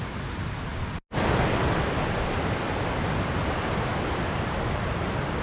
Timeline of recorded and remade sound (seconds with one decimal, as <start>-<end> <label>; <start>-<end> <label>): 0.0-5.4 recorded